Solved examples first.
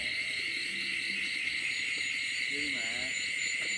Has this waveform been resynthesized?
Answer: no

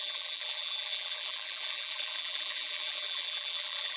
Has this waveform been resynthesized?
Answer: yes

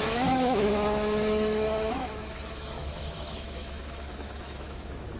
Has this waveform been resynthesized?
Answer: yes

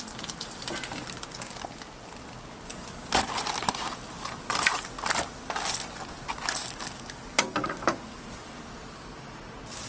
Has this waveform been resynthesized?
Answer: no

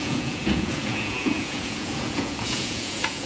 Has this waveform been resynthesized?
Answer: yes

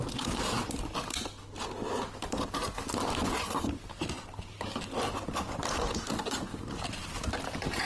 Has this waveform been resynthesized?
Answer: no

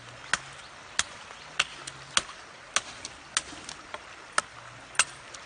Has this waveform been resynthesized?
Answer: no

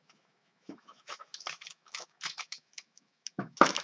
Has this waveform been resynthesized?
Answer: yes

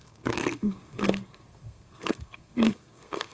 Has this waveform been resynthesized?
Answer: yes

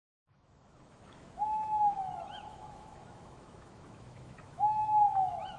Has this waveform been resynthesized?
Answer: yes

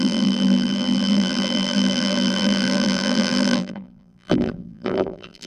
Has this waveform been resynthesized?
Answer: yes